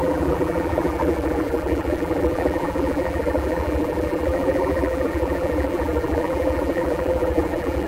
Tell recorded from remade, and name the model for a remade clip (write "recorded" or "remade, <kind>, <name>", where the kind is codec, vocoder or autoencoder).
remade, vocoder, BigVGAN v2